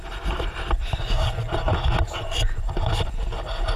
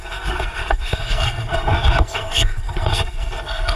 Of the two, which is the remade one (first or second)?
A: second